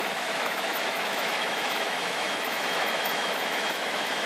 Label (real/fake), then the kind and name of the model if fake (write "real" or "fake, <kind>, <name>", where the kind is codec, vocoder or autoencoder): fake, autoencoder, DAC-VAE